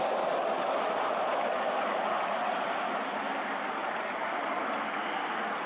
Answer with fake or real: real